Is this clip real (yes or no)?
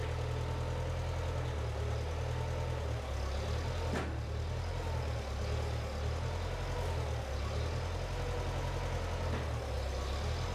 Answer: yes